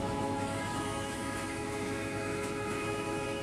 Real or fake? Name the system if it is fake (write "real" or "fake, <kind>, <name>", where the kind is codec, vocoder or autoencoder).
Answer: fake, autoencoder, DAC-VAE